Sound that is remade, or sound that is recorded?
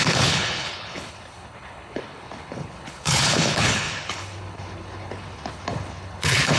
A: remade